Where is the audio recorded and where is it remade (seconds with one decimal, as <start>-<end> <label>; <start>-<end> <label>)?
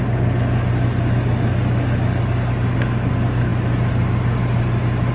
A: 0.0-5.1 recorded